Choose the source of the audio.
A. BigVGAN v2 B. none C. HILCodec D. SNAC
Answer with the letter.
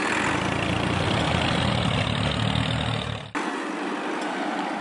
B